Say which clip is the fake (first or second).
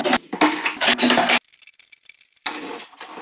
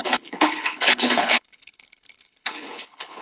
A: second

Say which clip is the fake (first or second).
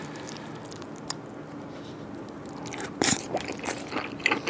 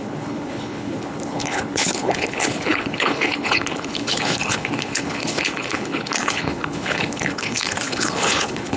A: second